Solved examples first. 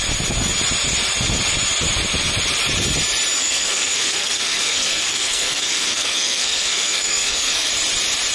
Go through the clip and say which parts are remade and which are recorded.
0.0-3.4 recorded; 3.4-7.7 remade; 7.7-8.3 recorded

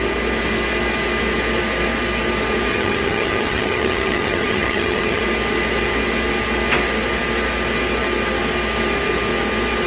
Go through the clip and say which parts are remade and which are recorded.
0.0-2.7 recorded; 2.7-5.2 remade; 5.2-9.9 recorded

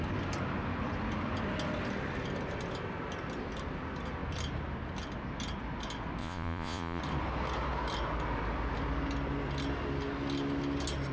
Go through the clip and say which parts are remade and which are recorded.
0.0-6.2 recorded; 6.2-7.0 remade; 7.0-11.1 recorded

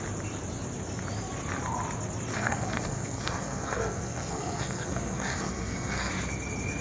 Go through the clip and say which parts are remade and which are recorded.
0.0-2.3 recorded; 2.3-6.1 remade; 6.1-6.8 recorded

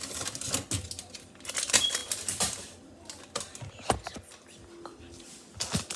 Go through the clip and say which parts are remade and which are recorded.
0.0-6.0 recorded

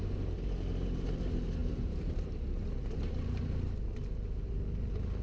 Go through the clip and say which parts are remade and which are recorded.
0.0-1.6 recorded; 1.6-4.5 remade; 4.5-5.2 recorded

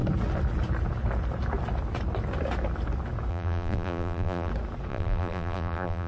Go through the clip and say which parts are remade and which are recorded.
0.0-3.3 recorded; 3.3-4.5 remade; 4.5-4.9 recorded; 4.9-6.1 remade

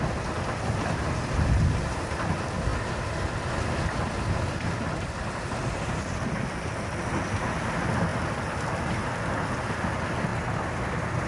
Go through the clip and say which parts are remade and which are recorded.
0.0-11.3 recorded